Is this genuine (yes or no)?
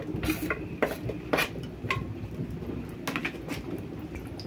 yes